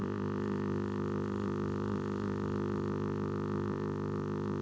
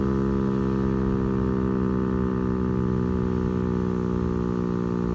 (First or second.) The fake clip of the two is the first